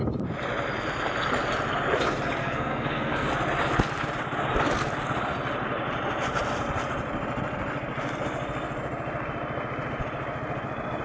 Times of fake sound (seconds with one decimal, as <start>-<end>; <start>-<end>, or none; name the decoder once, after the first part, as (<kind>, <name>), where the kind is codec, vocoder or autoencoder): 2.4-3.3 (codec, SNAC)